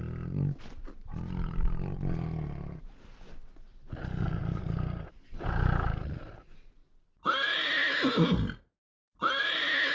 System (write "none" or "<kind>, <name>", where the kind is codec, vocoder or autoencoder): none